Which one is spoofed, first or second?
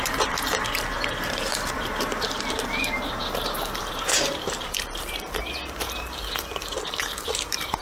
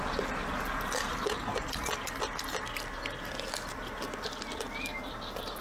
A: first